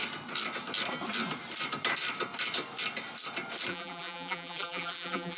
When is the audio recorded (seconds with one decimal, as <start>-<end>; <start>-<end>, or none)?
0.0-3.7